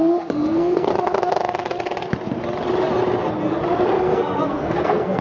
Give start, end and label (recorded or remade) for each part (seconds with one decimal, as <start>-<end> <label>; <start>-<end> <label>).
0.0-0.9 remade; 0.9-4.0 recorded; 4.0-5.2 remade